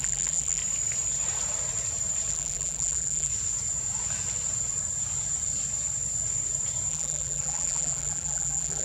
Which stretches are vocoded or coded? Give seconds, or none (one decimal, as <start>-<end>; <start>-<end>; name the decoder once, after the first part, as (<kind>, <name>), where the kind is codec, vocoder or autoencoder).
0.0-0.6 (vocoder, BigVGAN v2); 2.3-3.3; 6.9-8.8